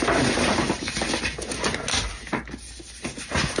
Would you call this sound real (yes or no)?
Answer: yes